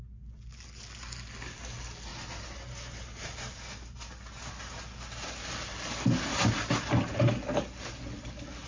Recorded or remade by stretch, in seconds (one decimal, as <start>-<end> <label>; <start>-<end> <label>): 0.0-8.7 recorded